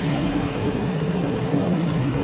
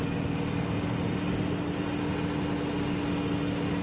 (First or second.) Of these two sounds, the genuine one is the second